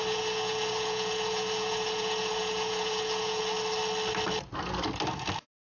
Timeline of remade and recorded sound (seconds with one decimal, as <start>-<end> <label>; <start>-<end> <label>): 0.0-3.4 remade; 3.4-5.7 recorded